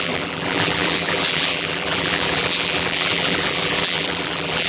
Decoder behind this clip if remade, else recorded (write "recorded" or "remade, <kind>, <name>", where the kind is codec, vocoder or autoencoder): remade, vocoder, BigVGAN v2